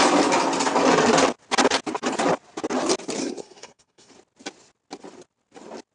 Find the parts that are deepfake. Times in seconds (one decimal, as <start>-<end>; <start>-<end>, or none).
3.2-4.1